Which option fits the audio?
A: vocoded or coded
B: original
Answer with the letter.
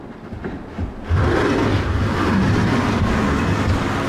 B